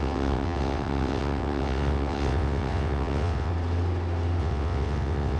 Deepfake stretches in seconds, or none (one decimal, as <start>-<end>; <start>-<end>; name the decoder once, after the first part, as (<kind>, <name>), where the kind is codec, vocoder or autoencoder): 0.0-3.5 (vocoder, WaveNeXt); 4.4-5.4